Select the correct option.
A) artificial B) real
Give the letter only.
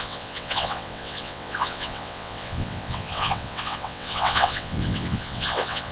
A